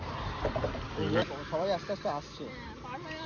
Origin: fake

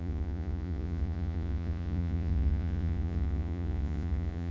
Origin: fake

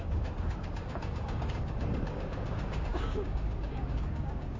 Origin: fake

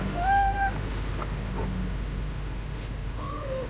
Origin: fake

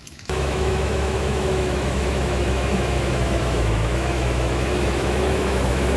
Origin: fake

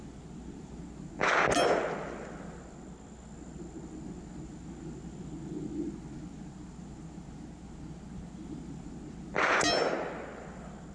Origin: real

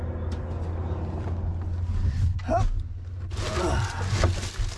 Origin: real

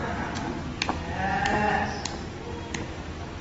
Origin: real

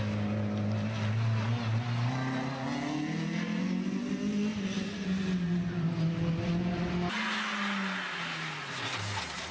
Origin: real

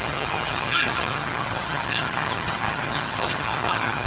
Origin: fake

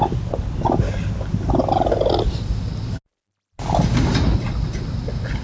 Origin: real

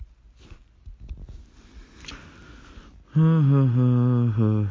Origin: real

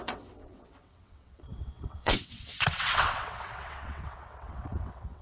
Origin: fake